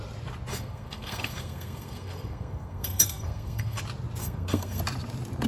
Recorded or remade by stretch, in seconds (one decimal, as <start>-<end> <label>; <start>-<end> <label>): 0.0-0.5 recorded; 0.5-3.8 remade; 3.8-4.2 recorded; 4.2-4.8 remade; 4.8-5.5 recorded